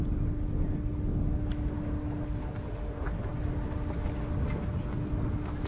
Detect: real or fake real